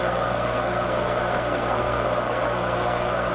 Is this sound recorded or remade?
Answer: remade